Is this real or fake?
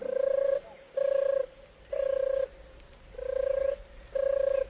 real